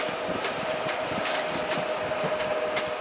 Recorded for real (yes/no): yes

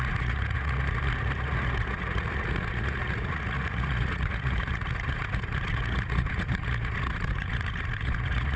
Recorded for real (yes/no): no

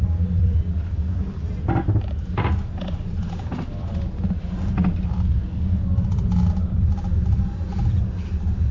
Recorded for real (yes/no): yes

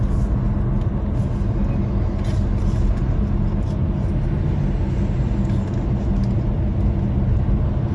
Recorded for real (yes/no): yes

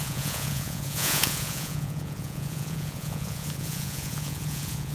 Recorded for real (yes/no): no